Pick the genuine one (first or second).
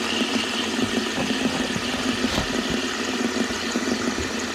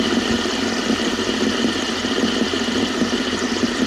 first